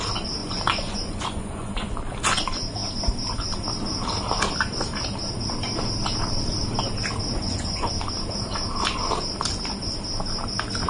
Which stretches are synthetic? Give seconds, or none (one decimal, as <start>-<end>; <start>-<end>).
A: 0.4-1.9; 7.4-7.9